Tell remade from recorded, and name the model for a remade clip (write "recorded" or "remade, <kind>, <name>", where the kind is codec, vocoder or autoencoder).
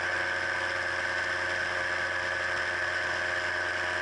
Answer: recorded